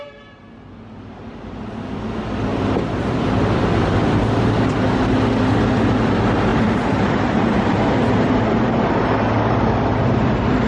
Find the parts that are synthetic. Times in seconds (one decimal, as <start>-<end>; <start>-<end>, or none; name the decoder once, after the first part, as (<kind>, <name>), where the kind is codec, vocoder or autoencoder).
2.5-3.6 (vocoder, BigVGAN v2); 6.5-8.9